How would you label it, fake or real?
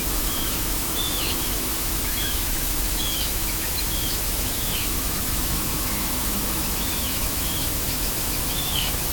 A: fake